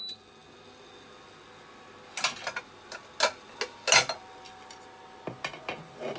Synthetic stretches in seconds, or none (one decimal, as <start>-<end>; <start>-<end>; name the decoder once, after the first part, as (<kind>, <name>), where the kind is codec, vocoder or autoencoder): none